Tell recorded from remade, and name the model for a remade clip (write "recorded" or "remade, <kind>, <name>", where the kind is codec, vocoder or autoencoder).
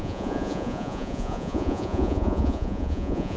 remade, vocoder, Vocos